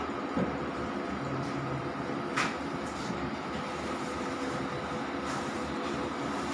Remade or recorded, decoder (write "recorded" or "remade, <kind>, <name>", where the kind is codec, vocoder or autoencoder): recorded